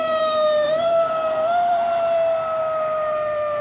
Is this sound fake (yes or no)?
yes